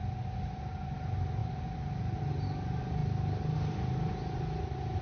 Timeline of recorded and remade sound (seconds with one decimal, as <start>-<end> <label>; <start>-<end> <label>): 0.0-5.0 recorded